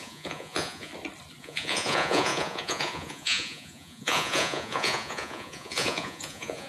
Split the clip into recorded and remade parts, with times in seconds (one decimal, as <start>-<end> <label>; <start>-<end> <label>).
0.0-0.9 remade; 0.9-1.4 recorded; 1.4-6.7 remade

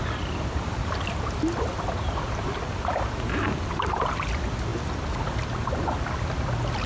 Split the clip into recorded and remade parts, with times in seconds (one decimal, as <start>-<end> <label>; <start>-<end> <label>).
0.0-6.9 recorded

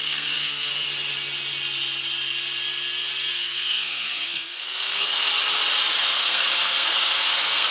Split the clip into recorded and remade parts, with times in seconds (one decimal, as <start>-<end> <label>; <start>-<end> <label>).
0.0-0.7 remade; 0.7-3.3 recorded; 3.3-5.3 remade; 5.3-6.0 recorded; 6.0-7.7 remade

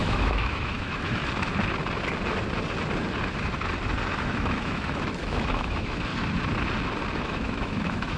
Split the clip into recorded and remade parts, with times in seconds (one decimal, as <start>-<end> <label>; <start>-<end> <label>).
0.0-1.2 remade; 1.2-4.2 recorded; 4.2-6.1 remade; 6.1-7.2 recorded; 7.2-8.2 remade